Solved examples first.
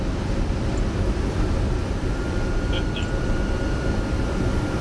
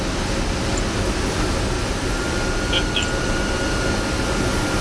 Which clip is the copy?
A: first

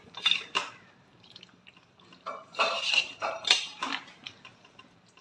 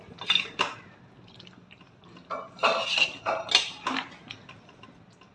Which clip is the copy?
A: first